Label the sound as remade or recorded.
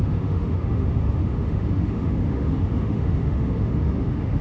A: remade